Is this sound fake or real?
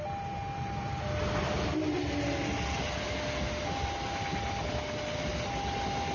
real